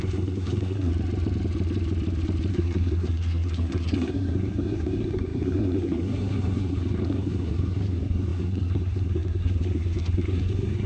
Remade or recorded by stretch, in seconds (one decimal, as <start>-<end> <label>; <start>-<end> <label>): 0.0-0.9 remade; 0.9-2.5 recorded; 2.5-10.9 remade